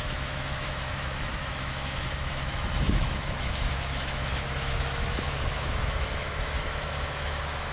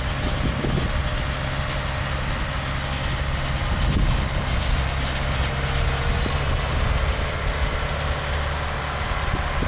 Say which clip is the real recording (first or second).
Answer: second